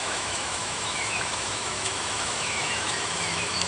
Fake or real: fake